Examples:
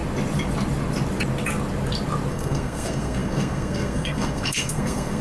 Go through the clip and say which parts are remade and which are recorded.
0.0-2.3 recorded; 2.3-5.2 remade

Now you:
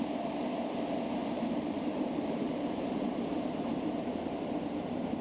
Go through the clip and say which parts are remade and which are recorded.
0.0-1.2 recorded; 1.2-4.3 remade; 4.3-5.2 recorded

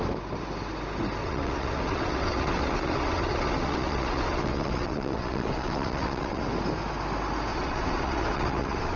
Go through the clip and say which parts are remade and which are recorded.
0.0-1.2 recorded; 1.2-6.4 remade; 6.4-7.5 recorded; 7.5-9.0 remade